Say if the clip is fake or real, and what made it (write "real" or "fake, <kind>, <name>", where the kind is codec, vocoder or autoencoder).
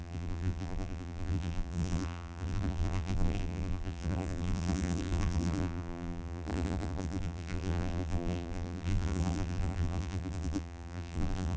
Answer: fake, vocoder, BigVGAN v2